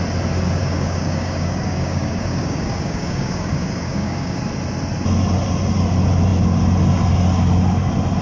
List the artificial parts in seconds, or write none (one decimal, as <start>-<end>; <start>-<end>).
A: 0.6-4.4